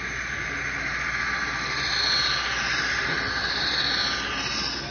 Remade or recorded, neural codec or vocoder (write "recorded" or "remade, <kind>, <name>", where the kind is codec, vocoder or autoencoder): recorded